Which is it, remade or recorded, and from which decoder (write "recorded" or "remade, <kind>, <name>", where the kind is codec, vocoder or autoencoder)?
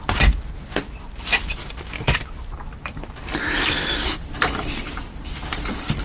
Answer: remade, vocoder, BigVGAN v2